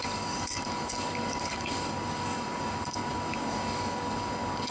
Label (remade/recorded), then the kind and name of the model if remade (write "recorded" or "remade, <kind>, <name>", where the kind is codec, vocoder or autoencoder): remade, codec, DAC